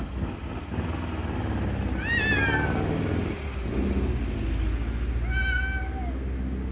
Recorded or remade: recorded